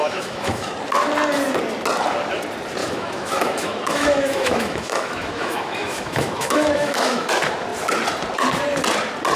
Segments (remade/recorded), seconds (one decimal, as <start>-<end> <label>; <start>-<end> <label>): 0.0-0.7 remade; 0.7-2.8 recorded; 2.8-7.3 remade; 7.3-9.4 recorded